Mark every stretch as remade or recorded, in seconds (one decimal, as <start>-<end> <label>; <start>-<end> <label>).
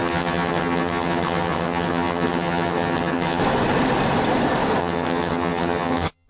0.0-3.4 remade; 3.4-4.8 recorded; 4.8-6.3 remade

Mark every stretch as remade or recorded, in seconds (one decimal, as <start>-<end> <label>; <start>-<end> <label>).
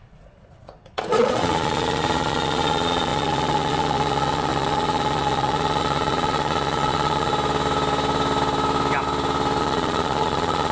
0.0-7.3 remade; 7.3-9.6 recorded; 9.6-10.7 remade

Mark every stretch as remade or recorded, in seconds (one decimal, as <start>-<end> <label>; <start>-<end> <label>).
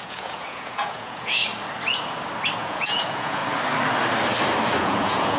0.0-1.4 remade; 1.4-2.6 recorded; 2.6-3.4 remade; 3.4-4.8 recorded; 4.8-5.4 remade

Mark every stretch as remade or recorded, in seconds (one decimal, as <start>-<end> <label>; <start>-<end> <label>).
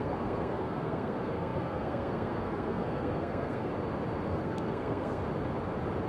0.0-3.7 remade; 3.7-4.3 recorded; 4.3-5.2 remade; 5.2-6.1 recorded